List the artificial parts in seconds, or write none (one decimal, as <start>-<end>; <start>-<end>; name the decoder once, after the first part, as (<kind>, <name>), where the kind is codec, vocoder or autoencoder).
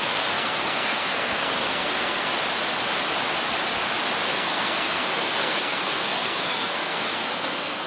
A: 0.0-2.3 (codec, SNAC); 4.3-7.9